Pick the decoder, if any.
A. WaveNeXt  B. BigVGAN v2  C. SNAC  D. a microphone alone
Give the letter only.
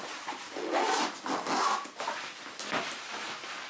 D